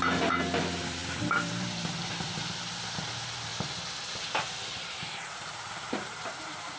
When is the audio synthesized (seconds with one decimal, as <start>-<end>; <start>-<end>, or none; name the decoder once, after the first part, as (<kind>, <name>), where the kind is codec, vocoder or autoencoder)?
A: 0.0-3.5 (vocoder, BigVGAN v2); 4.7-6.8

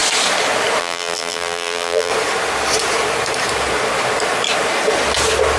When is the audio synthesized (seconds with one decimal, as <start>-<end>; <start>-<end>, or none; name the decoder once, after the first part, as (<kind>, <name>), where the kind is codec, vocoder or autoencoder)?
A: 0.8-2.1 (vocoder, BigVGAN v2)

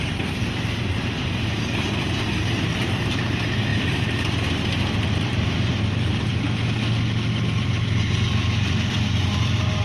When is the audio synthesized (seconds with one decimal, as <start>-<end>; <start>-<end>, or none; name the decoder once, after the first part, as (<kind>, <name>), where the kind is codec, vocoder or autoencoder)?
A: 0.0-6.3 (vocoder, BigVGAN v2); 7.6-9.8

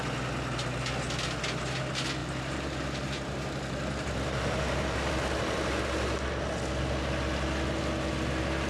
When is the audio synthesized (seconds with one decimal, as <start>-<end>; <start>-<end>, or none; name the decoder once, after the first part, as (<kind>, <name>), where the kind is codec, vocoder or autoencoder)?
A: 2.2-5.1 (vocoder, BigVGAN v2)

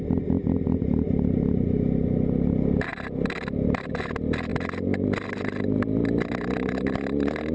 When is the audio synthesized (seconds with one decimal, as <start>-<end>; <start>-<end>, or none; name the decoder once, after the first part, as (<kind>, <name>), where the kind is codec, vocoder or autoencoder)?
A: none

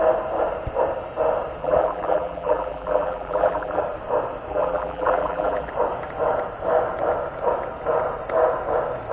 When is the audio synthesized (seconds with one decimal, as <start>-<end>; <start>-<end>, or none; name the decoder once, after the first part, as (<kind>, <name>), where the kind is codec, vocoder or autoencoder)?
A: 1.6-3.8 (vocoder, BigVGAN v2); 4.5-5.7